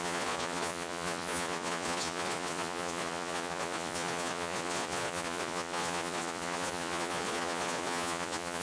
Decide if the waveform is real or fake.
fake